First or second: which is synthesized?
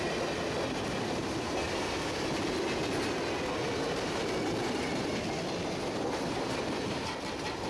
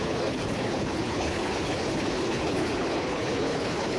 second